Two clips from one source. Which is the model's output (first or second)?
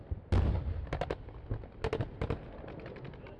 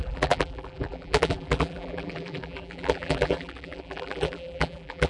second